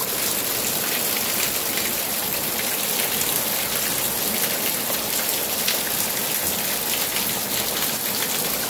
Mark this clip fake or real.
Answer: real